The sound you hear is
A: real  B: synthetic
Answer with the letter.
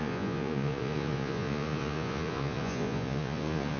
B